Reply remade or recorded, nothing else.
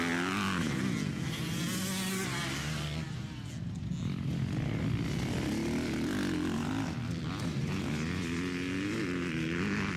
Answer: recorded